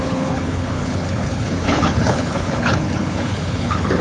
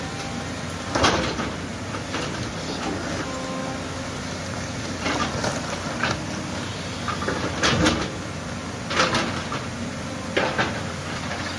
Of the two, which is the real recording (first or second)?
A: second